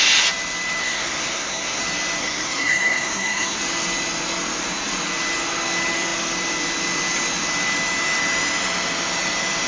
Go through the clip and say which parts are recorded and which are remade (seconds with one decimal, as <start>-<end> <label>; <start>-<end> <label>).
0.0-0.8 recorded; 0.8-1.8 remade; 1.8-2.2 recorded; 2.2-3.6 remade; 3.6-9.7 recorded

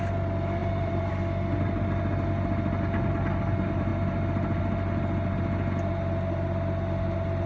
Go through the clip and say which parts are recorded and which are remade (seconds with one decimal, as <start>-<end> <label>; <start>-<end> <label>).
0.0-0.6 recorded; 0.6-1.1 remade; 1.1-7.5 recorded

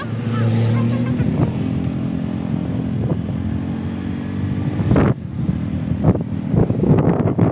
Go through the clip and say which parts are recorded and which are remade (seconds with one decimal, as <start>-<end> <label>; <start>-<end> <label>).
0.0-6.6 recorded; 6.6-7.5 remade

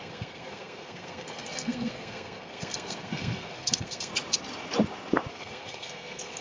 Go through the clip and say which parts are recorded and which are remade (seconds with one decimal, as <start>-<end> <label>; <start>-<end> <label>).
0.0-4.1 remade; 4.1-5.3 recorded; 5.3-6.4 remade